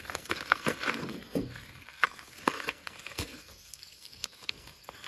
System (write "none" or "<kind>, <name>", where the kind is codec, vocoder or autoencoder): codec, SNAC